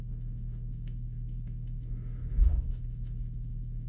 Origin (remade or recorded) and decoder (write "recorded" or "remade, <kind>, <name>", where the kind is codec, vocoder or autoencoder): remade, autoencoder, DAC-VAE